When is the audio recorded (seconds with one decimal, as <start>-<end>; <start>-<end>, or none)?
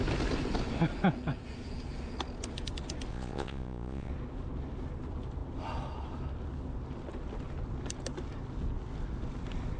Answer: 0.0-3.1; 4.1-9.8